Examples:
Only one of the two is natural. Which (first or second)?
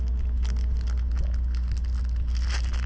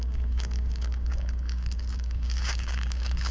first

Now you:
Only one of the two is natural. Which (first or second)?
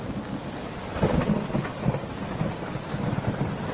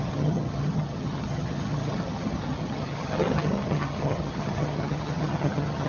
first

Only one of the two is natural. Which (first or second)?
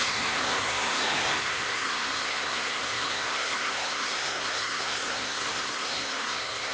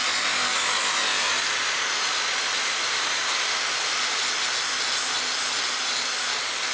second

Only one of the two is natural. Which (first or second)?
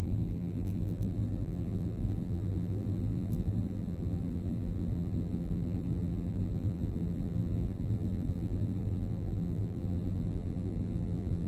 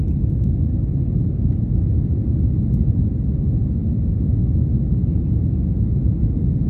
second